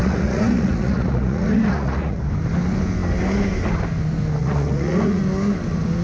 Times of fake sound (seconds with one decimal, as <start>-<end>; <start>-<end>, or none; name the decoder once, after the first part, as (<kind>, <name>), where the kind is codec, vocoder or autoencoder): 0.0-2.2 (vocoder, Vocos); 4.4-5.2